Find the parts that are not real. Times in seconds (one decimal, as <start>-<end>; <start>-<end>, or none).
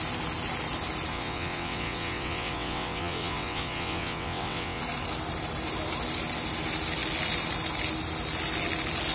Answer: 1.1-4.8